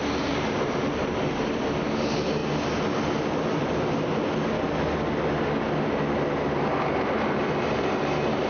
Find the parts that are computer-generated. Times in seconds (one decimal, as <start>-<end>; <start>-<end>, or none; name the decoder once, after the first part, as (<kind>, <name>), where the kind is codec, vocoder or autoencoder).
0.0-2.4 (vocoder, BigVGAN v2); 6.5-8.5